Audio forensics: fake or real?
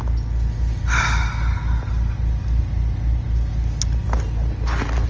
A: real